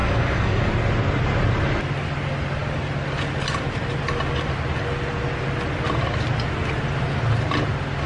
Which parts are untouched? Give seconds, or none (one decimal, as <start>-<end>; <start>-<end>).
0.7-8.1